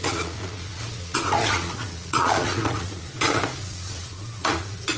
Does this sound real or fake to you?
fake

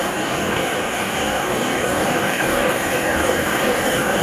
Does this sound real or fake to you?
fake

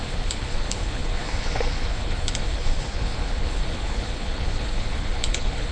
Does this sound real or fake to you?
fake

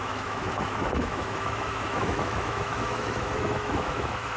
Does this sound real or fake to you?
fake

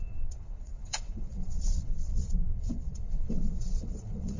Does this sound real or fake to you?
fake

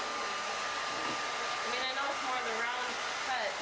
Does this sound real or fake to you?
real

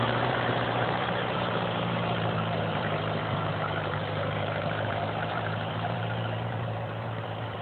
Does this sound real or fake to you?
fake